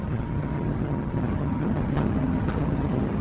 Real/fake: fake